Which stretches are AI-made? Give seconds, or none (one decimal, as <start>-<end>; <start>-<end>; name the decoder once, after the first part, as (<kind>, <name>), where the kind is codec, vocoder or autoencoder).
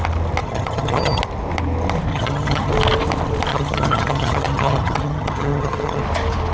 0.4-1.2 (vocoder, HiFi-GAN); 2.1-2.7; 3.5-6.0